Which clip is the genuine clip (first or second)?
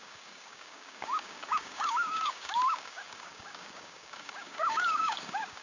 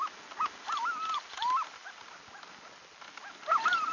second